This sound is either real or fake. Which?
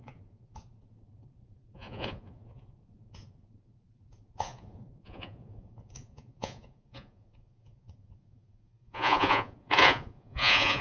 fake